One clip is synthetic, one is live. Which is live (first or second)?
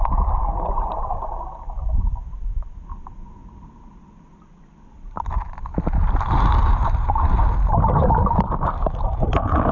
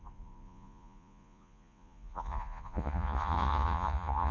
first